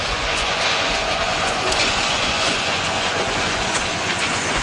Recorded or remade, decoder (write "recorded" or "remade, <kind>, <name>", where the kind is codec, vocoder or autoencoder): remade, vocoder, Vocos